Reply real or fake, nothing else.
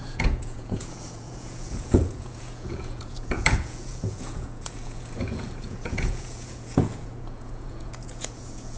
fake